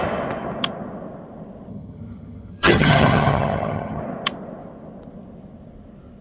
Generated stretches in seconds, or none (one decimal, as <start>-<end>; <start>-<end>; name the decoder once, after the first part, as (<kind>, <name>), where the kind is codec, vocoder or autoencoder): 1.7-4.0 (vocoder, HiFi-GAN)